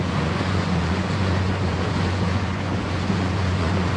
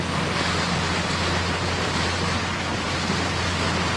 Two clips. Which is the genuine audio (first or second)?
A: second